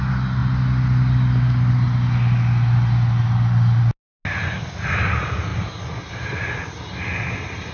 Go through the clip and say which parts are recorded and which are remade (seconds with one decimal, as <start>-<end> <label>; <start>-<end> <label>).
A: 0.0-7.7 recorded